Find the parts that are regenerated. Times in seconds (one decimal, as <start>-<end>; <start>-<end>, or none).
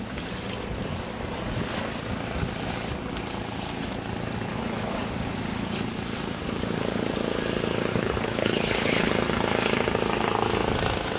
4.5-5.0; 7.9-9.1